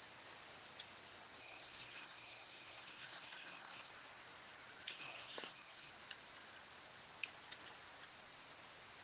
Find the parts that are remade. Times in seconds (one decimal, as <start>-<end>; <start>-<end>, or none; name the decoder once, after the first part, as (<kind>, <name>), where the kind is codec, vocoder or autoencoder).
1.4-3.9 (codec, SNAC); 4.9-5.9